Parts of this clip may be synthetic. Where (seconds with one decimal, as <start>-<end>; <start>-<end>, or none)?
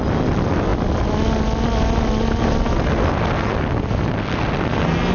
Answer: none